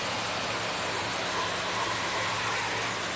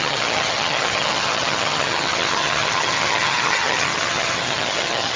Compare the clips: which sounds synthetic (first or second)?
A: second